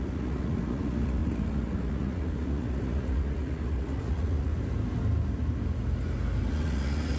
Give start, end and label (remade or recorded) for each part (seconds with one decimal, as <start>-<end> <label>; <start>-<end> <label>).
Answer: 0.0-4.5 remade; 4.5-6.5 recorded; 6.5-7.2 remade